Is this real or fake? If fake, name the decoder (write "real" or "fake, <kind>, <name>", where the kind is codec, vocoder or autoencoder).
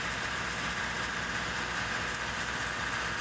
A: real